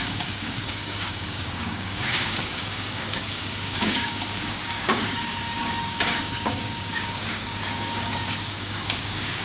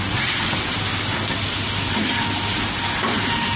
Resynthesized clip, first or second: first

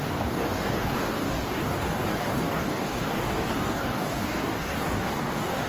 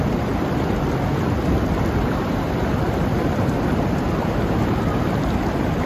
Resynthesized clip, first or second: first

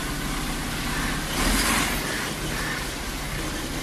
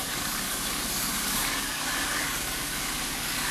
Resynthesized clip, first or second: second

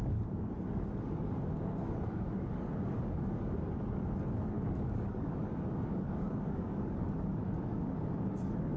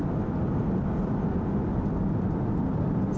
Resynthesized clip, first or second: first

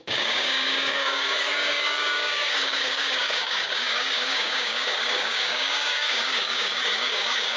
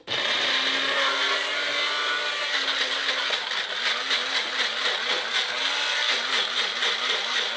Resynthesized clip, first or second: first